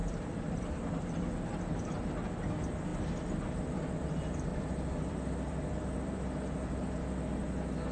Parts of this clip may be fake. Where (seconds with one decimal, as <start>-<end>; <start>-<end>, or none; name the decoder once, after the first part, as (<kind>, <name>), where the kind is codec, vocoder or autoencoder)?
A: 0.0-1.1 (vocoder, BigVGAN v2); 4.5-6.2